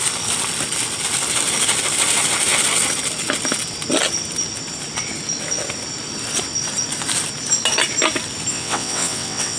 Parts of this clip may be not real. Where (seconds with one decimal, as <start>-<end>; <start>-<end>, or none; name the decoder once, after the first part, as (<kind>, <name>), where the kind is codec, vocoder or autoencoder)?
8.5-9.6 (vocoder, WaveNeXt)